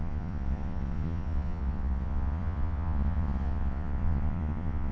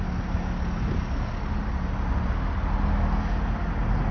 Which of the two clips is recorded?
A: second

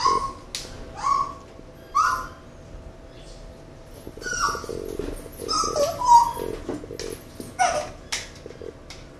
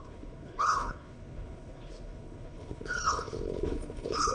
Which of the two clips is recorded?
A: first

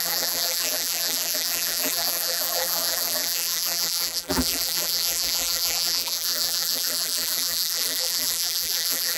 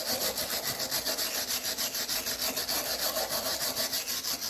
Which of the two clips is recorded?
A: second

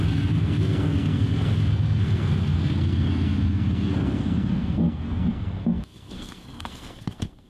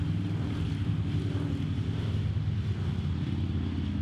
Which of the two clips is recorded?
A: second